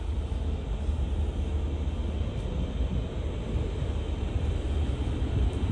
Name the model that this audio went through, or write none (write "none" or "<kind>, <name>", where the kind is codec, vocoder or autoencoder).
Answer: none